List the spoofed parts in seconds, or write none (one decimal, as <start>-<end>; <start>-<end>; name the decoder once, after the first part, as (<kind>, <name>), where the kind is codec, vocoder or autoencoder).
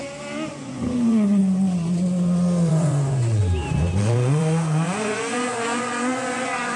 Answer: 0.5-1.4 (vocoder, Vocos); 2.7-3.4; 4.0-6.8